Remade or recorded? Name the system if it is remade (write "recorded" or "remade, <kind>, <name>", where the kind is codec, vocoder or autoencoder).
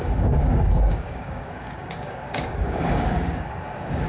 remade, codec, DAC